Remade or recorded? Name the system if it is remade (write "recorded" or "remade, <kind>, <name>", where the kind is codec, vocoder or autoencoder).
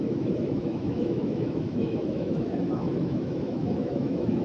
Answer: remade, autoencoder, DAC-VAE